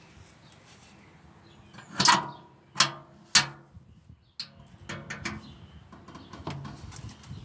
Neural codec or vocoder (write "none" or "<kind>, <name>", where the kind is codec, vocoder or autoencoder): none